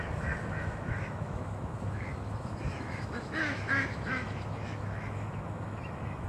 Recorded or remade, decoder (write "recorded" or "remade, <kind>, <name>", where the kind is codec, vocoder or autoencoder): remade, autoencoder, DAC-VAE